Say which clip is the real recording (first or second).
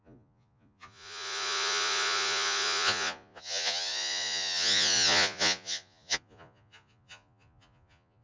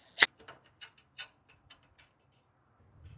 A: second